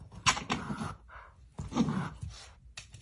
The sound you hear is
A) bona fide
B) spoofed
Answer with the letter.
A